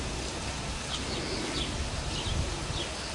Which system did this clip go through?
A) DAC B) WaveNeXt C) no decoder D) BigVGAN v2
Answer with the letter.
C